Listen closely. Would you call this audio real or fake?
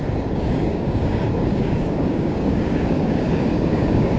fake